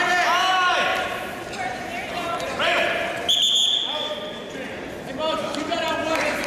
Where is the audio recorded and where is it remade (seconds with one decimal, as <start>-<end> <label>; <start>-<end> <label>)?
0.0-0.9 recorded; 0.9-2.6 remade; 2.6-4.0 recorded; 4.0-5.9 remade; 5.9-6.5 recorded